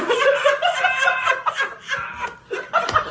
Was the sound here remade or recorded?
recorded